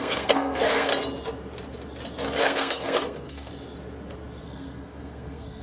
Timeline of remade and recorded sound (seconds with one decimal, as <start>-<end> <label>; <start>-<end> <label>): 0.0-0.9 remade; 0.9-2.4 recorded; 2.4-3.5 remade; 3.5-4.4 recorded; 4.4-5.6 remade